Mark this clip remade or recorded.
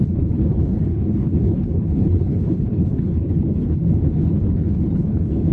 remade